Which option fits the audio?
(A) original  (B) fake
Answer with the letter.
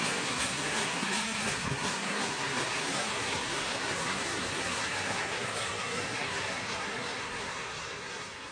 B